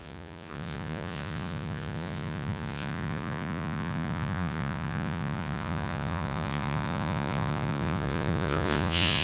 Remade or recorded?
remade